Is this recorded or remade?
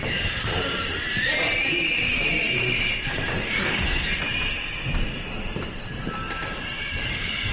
remade